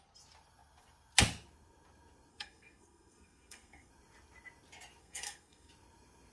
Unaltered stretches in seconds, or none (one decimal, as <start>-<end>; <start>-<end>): 0.0-2.3; 3.9-5.0; 5.7-6.3